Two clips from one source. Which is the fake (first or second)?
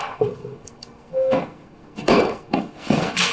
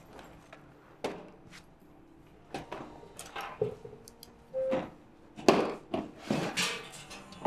first